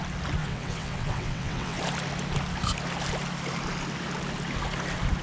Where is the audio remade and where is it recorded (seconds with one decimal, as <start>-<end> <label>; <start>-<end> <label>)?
0.0-0.4 recorded; 0.4-1.8 remade; 1.8-5.2 recorded